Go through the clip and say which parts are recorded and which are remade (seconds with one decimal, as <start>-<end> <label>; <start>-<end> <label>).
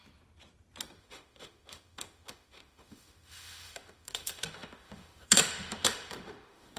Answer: 0.0-1.0 recorded; 1.0-6.8 remade